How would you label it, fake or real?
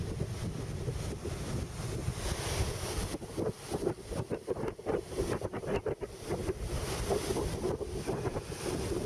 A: real